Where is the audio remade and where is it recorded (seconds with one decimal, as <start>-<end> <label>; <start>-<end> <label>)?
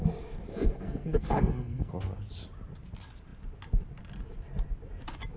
0.0-0.5 recorded; 0.5-1.9 remade; 1.9-5.4 recorded